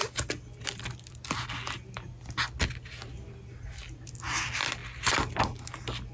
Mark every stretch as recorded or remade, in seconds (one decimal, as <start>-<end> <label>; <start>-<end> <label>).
0.0-6.1 recorded